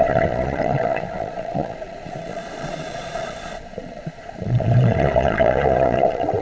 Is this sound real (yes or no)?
no